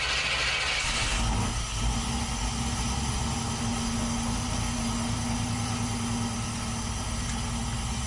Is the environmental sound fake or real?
real